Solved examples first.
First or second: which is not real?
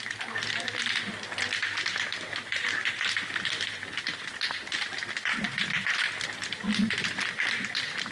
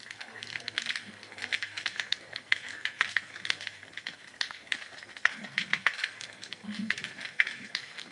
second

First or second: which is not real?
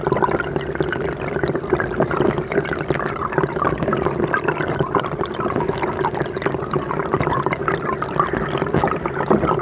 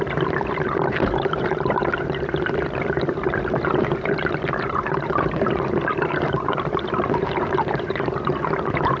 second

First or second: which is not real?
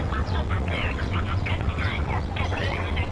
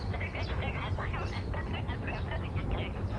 first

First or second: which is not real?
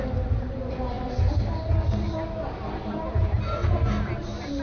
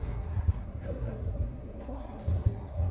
second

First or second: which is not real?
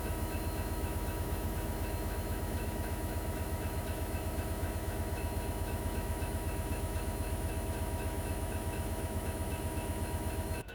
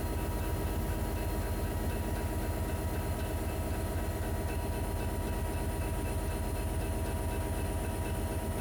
first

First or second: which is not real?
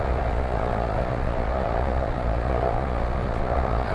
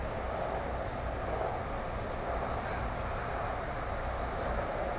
first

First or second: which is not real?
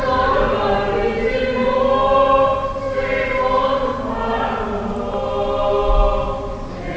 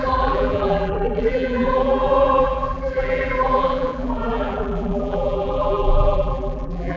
second